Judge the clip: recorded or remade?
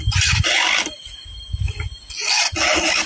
recorded